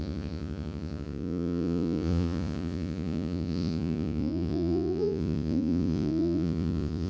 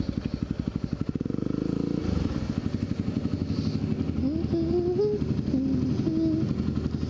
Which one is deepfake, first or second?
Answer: first